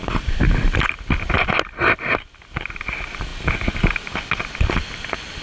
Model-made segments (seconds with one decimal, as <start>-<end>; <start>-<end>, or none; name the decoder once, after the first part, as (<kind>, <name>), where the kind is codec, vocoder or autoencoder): none